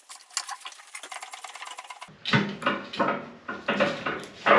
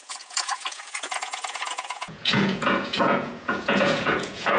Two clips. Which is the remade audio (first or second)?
second